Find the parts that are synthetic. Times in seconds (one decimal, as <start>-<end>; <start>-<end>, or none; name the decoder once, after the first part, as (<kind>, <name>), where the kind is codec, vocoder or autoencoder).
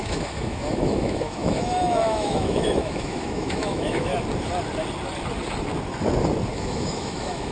0.0-4.1 (autoencoder, DAC-VAE); 6.5-7.5